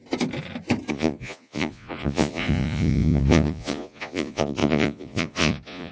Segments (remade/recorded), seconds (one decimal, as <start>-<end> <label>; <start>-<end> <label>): 0.0-0.9 recorded; 0.9-5.9 remade

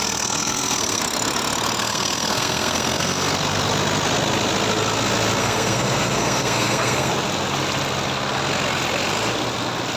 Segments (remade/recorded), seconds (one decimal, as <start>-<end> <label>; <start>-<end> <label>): 0.0-1.0 remade; 1.0-1.8 recorded; 1.8-3.3 remade; 3.3-5.4 recorded; 5.4-7.1 remade; 7.1-10.0 recorded

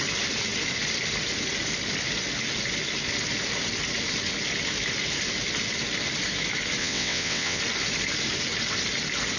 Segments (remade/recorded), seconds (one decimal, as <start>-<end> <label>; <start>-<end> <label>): 0.0-6.8 recorded; 6.8-7.6 remade; 7.6-9.4 recorded